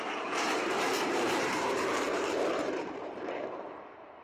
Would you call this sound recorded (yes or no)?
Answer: no